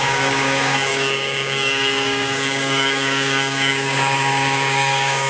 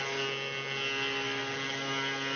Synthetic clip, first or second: first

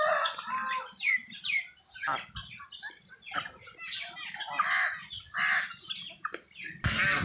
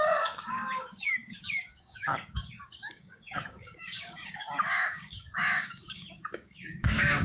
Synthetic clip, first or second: second